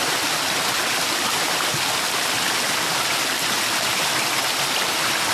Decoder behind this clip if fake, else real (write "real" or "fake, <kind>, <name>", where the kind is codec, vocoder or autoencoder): real